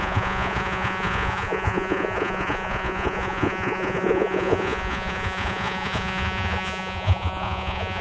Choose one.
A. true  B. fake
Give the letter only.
B